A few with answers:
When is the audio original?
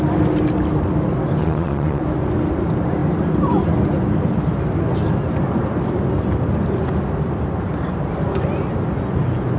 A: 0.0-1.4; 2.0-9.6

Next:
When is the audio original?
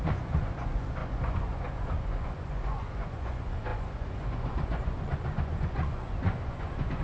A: none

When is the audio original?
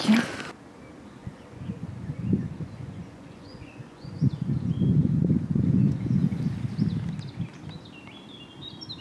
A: 0.0-1.2; 6.4-9.0